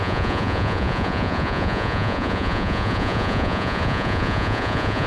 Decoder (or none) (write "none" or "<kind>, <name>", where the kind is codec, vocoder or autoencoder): vocoder, Vocos